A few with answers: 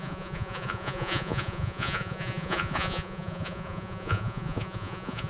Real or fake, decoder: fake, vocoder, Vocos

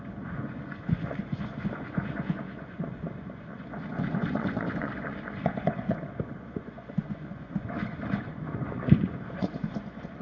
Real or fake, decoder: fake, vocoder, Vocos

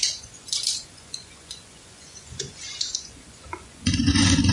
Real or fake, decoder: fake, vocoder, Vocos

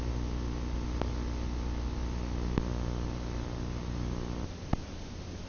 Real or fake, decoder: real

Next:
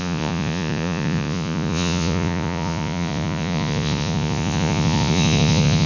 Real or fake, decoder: fake, vocoder, Vocos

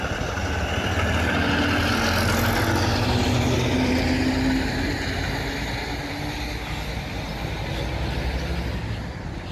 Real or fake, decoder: real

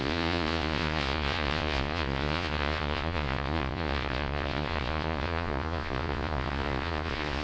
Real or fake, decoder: fake, vocoder, Vocos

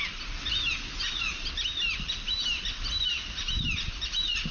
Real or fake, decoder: real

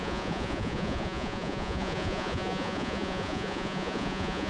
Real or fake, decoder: fake, vocoder, Vocos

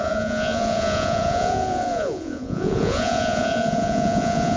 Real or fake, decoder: fake, vocoder, Vocos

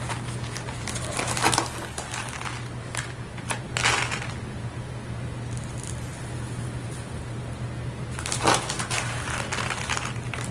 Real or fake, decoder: real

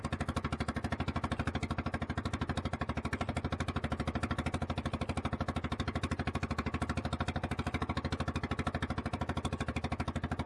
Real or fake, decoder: real